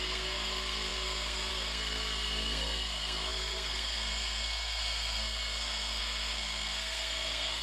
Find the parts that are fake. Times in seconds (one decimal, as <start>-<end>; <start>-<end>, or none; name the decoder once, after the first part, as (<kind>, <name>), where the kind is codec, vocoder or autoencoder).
0.0-7.6 (codec, SNAC)